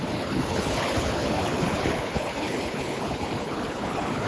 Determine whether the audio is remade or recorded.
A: remade